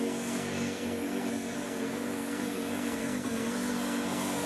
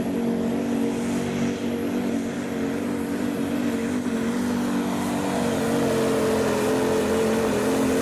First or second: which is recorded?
second